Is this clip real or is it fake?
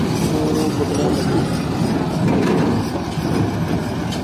real